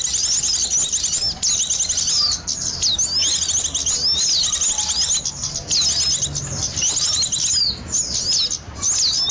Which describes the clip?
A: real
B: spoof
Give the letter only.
A